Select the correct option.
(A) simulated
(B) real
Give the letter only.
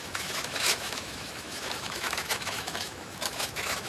A